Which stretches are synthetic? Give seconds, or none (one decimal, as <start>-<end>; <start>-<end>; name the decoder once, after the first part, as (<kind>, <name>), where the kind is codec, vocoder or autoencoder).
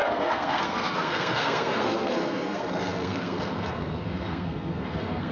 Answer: 0.0-5.3 (codec, SNAC)